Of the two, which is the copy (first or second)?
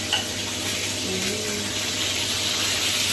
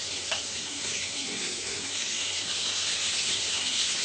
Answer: second